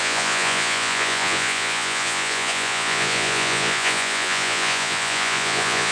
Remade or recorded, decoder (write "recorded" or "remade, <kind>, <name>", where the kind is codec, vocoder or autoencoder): remade, vocoder, Vocos